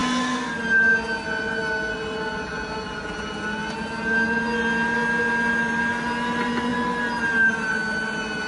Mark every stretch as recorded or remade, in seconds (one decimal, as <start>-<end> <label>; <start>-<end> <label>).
0.0-8.5 recorded